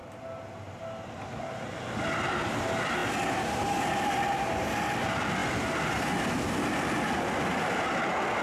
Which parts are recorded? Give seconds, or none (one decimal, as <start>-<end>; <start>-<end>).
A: 0.0-8.4